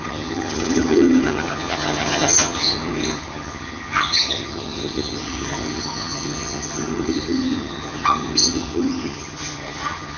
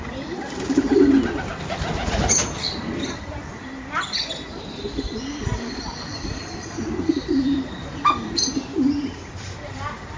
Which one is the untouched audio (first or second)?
second